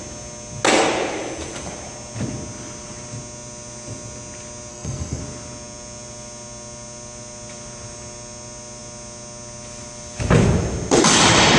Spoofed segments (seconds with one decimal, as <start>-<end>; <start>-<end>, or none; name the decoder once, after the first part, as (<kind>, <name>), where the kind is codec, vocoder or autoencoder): 4.7-5.2 (codec, SNAC)